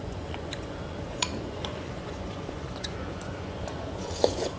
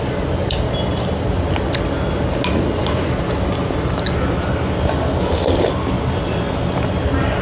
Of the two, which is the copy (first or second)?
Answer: first